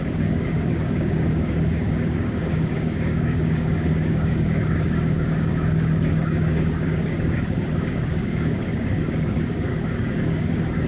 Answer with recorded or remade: remade